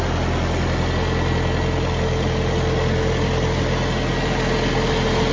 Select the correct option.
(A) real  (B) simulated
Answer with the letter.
A